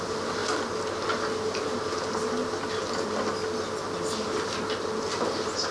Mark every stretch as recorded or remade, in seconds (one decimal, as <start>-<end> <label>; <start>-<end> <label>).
0.0-5.7 recorded